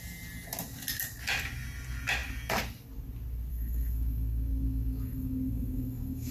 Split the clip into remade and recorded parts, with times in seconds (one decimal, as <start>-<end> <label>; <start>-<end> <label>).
0.0-3.5 recorded; 3.5-6.3 remade